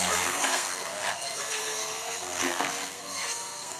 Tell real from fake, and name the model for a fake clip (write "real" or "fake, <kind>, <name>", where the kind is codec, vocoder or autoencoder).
fake, codec, SNAC